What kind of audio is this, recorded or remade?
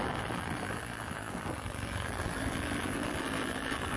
remade